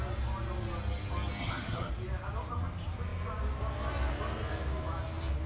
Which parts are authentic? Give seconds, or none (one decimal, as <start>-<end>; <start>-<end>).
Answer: 0.0-1.4; 1.9-5.5